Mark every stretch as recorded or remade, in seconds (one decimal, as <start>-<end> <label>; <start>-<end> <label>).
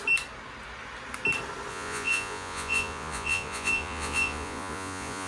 0.0-1.7 recorded; 1.7-5.3 remade